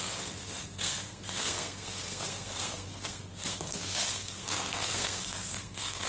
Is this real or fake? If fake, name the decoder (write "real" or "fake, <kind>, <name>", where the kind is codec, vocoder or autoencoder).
fake, codec, SNAC